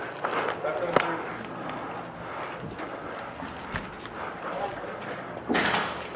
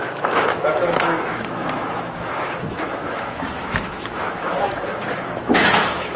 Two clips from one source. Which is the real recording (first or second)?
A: first